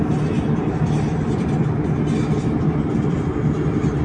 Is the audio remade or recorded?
recorded